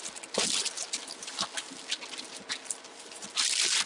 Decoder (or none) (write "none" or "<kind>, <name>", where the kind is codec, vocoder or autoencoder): none